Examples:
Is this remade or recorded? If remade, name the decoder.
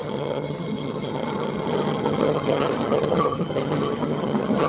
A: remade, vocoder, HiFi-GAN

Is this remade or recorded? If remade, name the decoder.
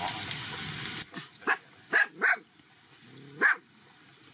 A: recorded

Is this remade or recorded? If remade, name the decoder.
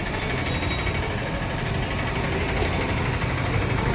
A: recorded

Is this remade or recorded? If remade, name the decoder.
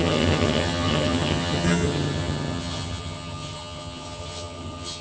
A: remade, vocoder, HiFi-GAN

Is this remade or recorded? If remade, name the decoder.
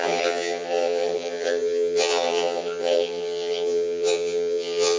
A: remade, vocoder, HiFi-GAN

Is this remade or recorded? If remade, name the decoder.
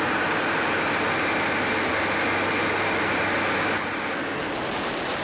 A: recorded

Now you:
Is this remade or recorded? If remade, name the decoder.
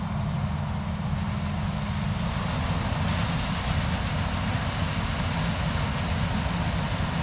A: recorded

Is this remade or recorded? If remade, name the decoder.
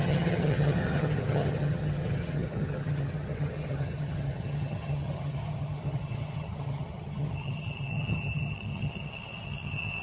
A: remade, vocoder, HiFi-GAN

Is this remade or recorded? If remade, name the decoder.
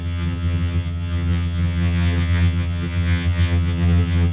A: remade, vocoder, HiFi-GAN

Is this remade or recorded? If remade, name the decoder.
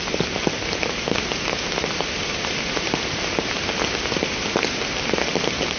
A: recorded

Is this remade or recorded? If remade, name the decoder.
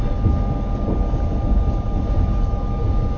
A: recorded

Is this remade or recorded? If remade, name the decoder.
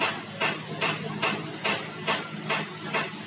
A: recorded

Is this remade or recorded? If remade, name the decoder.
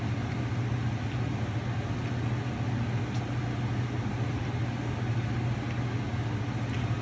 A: recorded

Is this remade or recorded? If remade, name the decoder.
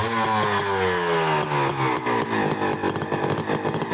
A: recorded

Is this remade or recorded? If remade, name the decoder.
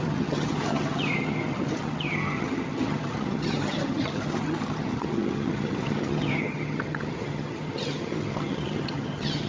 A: remade, vocoder, HiFi-GAN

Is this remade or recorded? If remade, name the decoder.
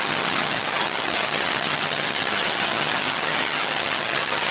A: remade, vocoder, HiFi-GAN